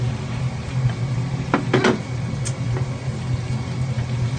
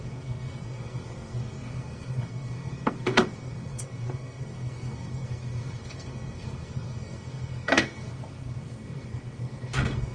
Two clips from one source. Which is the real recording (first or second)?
first